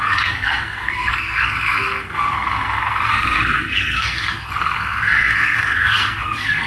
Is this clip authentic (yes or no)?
no